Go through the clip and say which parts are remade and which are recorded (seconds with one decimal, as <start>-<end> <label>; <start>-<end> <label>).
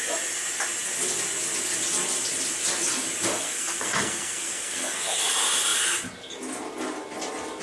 0.0-3.3 recorded; 3.3-5.3 remade; 5.3-7.6 recorded